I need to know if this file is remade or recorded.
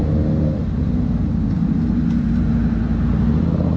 recorded